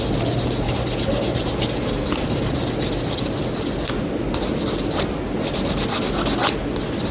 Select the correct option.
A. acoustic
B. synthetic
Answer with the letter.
A